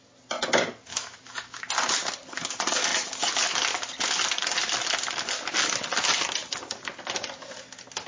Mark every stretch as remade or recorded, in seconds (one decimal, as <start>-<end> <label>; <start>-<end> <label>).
0.0-0.9 recorded; 0.9-1.7 remade; 1.7-8.1 recorded